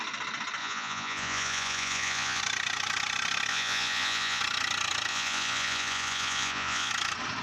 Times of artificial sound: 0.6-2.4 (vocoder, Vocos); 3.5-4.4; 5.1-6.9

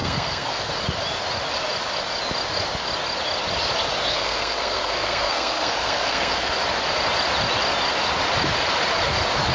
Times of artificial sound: 0.0-0.7 (codec, SNAC); 4.1-6.5